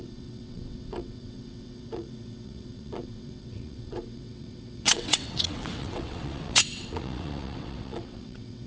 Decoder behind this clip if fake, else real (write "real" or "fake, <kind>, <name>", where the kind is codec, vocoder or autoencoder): fake, vocoder, WaveNeXt